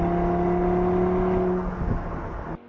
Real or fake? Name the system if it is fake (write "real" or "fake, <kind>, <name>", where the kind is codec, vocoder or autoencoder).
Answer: real